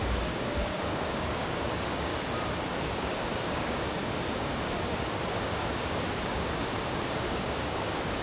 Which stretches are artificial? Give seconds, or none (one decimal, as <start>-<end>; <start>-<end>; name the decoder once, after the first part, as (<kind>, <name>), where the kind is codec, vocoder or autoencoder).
0.0-2.1 (codec, DAC); 3.3-8.2